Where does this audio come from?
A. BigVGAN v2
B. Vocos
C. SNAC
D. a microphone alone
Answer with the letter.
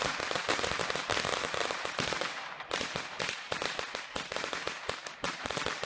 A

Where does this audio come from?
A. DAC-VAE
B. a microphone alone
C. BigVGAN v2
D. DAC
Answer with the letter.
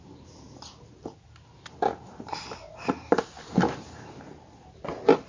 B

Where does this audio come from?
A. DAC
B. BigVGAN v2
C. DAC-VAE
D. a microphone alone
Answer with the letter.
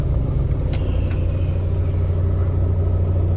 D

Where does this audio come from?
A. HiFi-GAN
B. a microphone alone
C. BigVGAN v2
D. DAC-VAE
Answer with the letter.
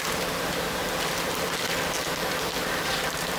C